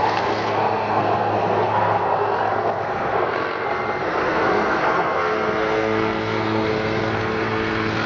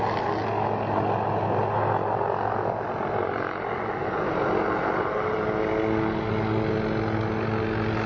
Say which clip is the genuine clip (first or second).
second